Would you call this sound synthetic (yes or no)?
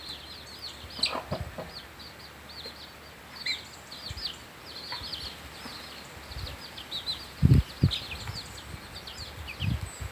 no